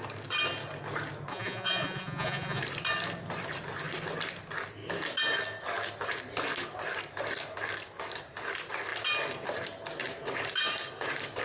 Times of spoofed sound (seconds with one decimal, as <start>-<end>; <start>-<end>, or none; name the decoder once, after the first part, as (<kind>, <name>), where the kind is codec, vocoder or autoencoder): 1.3-2.6 (vocoder, Vocos)